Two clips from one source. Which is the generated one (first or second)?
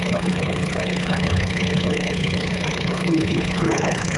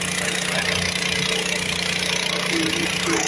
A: first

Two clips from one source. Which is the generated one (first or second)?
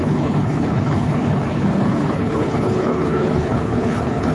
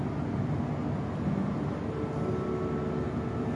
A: first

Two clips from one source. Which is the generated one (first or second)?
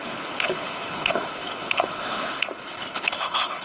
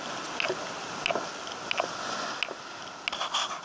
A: first